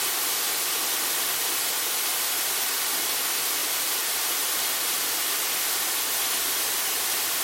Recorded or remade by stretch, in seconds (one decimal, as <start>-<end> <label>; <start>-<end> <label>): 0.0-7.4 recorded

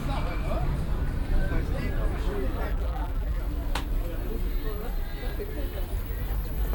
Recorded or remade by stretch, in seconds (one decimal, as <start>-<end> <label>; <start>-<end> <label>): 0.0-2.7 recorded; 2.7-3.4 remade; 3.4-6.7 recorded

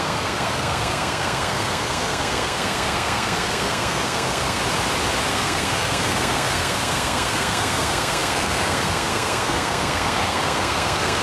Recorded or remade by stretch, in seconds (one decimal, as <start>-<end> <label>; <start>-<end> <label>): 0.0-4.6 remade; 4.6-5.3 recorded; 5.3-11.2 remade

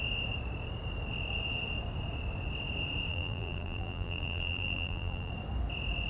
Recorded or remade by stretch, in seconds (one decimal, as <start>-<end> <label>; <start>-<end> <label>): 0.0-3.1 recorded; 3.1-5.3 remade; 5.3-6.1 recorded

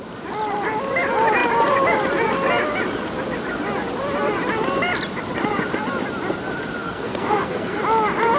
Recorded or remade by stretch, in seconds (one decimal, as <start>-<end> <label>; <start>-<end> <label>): 0.0-6.8 recorded; 6.8-7.8 remade; 7.8-8.4 recorded